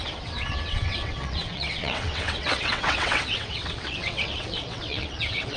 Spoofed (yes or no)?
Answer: yes